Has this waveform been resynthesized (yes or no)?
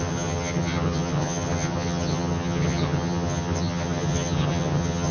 yes